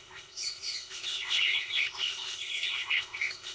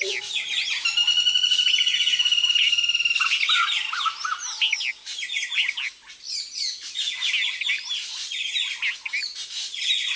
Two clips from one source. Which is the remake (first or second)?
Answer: first